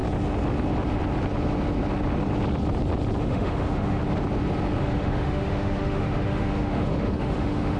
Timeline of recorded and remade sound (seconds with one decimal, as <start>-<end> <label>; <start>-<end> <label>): 0.0-3.2 recorded; 3.2-4.0 remade; 4.0-4.8 recorded; 4.8-7.8 remade